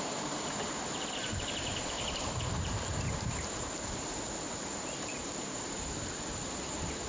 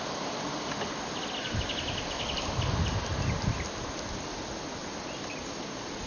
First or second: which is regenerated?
first